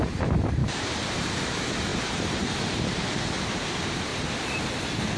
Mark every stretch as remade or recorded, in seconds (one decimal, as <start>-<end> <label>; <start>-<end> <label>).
0.0-0.6 recorded; 0.6-1.3 remade; 1.3-1.9 recorded; 1.9-3.4 remade; 3.4-4.1 recorded; 4.1-4.7 remade; 4.7-5.2 recorded